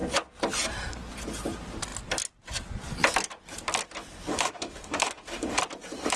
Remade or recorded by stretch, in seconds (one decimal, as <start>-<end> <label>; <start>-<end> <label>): 0.0-4.3 recorded; 4.3-5.6 remade; 5.6-6.2 recorded